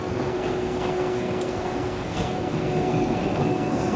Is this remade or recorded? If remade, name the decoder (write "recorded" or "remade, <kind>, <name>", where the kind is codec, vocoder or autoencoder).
remade, codec, SNAC